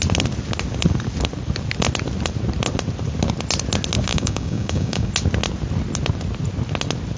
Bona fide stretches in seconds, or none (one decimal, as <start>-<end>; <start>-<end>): 0.0-4.1; 5.1-7.2